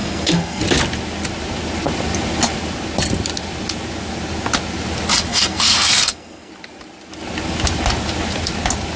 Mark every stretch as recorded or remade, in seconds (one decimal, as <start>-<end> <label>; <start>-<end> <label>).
0.0-0.6 remade; 0.6-5.3 recorded; 5.3-6.5 remade; 6.5-9.0 recorded